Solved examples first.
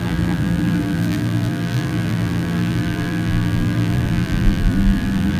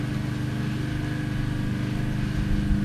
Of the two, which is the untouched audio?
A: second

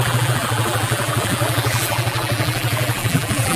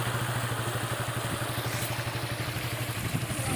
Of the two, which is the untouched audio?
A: second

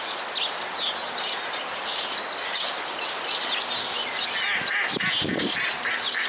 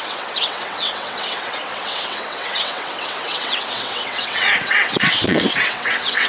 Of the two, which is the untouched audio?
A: first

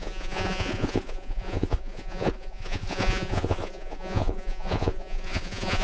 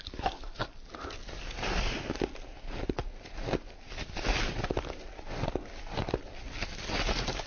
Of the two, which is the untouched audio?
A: second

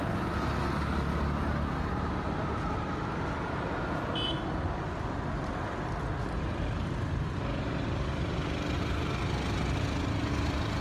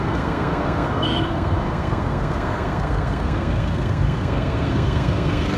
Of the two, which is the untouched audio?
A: first